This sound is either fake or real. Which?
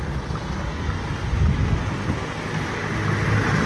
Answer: real